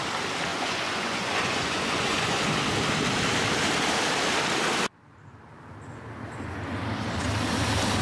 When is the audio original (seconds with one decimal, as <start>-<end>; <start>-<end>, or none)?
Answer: 0.0-0.5; 2.4-8.0